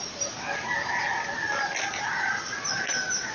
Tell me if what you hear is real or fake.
real